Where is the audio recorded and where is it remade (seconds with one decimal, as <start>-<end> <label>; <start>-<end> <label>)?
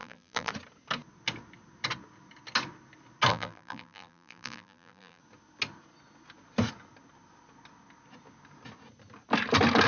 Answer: 0.0-0.5 remade; 0.5-3.3 recorded; 3.3-5.2 remade; 5.2-9.9 recorded